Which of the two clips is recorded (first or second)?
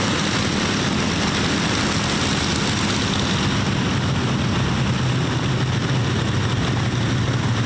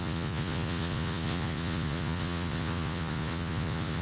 first